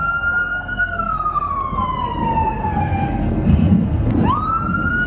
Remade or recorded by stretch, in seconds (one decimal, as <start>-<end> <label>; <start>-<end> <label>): 0.0-0.4 recorded; 0.4-1.5 remade; 1.5-2.6 recorded; 2.6-4.1 remade; 4.1-5.1 recorded